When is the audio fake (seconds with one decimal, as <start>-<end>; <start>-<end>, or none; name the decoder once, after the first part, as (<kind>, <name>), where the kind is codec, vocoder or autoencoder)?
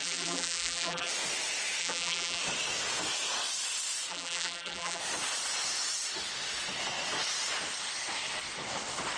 0.0-1.1 (vocoder, BigVGAN v2); 1.8-2.4; 4.1-5.0